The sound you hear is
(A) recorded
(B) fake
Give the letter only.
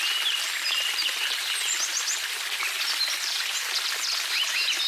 B